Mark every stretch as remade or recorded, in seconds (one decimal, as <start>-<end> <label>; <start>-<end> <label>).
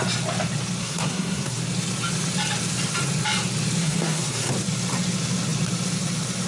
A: 0.0-0.8 recorded; 0.8-1.6 remade; 1.6-3.8 recorded; 3.8-4.5 remade; 4.5-6.5 recorded